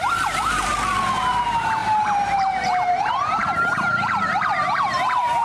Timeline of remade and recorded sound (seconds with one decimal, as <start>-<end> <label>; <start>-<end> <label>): 0.0-0.7 remade; 0.7-1.3 recorded; 1.3-5.4 remade